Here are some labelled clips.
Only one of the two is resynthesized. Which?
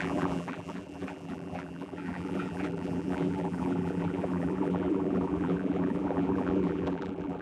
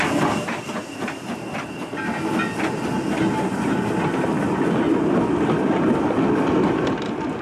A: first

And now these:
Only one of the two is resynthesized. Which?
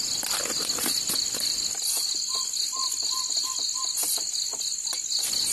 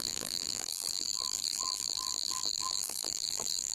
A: second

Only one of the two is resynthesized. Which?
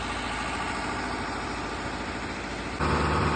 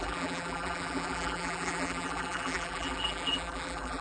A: second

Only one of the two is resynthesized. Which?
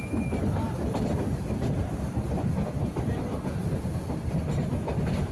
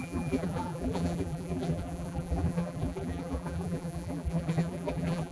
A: second